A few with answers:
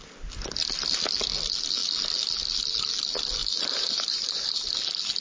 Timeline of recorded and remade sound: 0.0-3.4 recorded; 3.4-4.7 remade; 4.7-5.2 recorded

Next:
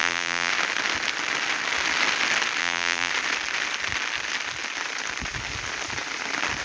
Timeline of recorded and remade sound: 0.0-0.5 remade; 0.5-2.6 recorded; 2.6-3.1 remade; 3.1-6.6 recorded

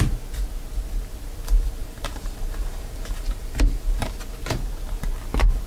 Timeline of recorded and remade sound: 0.0-1.8 recorded; 1.8-4.1 remade; 4.1-5.7 recorded

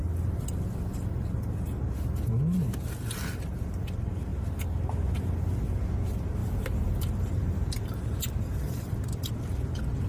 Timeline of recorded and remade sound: 0.0-6.4 recorded; 6.4-9.3 remade; 9.3-10.1 recorded